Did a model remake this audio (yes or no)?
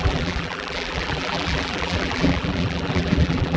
yes